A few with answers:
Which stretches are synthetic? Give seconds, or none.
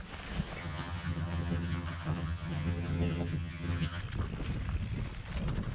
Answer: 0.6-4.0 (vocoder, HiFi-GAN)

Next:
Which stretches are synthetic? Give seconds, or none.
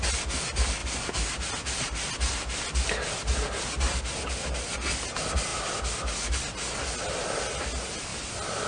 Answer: none